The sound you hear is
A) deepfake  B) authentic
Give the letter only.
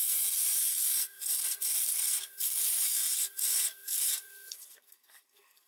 A